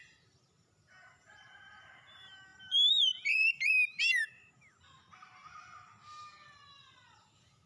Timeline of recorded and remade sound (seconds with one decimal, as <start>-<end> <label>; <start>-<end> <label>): 0.0-4.2 remade; 4.2-7.2 recorded; 7.2-7.7 remade